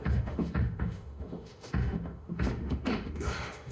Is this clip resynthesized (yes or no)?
yes